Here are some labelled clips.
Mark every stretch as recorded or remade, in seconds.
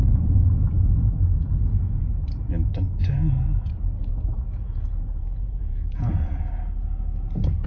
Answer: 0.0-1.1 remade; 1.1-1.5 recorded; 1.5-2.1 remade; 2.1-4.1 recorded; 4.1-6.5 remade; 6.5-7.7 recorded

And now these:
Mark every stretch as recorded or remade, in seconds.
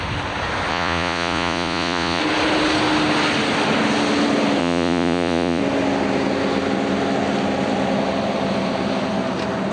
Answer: 0.0-0.7 recorded; 0.7-2.2 remade; 2.2-4.6 recorded; 4.6-5.6 remade; 5.6-9.7 recorded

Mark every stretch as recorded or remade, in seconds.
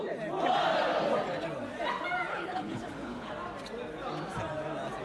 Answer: 0.0-2.3 recorded; 2.3-3.3 remade; 3.3-5.0 recorded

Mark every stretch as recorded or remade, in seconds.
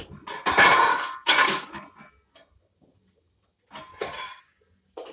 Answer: 0.0-0.9 recorded; 0.9-1.7 remade; 1.7-3.9 recorded; 3.9-4.6 remade; 4.6-5.1 recorded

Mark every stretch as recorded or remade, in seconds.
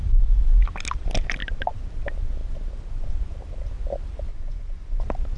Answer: 0.0-4.3 recorded; 4.3-5.0 remade; 5.0-5.4 recorded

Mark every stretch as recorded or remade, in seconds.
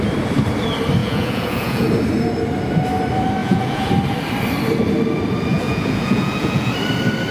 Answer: 0.0-1.0 recorded; 1.0-1.9 remade; 1.9-3.4 recorded; 3.4-3.9 remade; 3.9-5.5 recorded; 5.5-6.7 remade; 6.7-7.3 recorded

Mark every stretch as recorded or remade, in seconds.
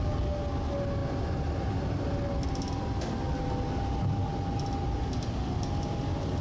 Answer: 0.0-6.4 recorded